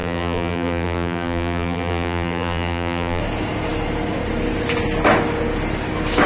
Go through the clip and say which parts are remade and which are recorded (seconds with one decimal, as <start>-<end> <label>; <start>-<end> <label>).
0.0-3.2 remade; 3.2-6.3 recorded